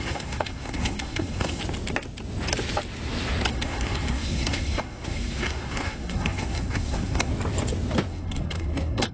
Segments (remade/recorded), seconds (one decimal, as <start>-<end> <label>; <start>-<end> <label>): 0.0-1.6 remade; 1.6-3.5 recorded; 3.5-7.3 remade; 7.3-8.1 recorded; 8.1-9.1 remade